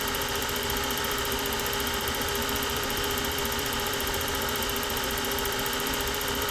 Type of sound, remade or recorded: remade